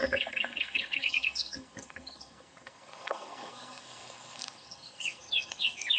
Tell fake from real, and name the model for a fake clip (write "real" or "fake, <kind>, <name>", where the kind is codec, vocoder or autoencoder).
fake, codec, SNAC